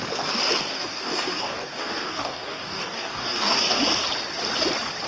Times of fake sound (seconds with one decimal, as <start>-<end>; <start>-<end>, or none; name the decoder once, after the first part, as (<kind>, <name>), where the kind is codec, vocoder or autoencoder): 0.7-3.8 (codec, DAC)